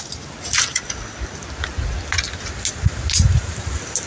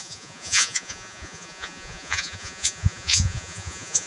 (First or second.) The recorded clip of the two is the first